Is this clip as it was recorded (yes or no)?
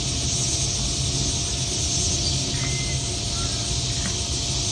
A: yes